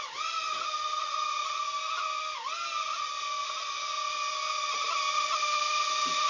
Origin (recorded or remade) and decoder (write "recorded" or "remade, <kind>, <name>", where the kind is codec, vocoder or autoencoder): recorded